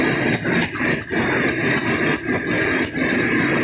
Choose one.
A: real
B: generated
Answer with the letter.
A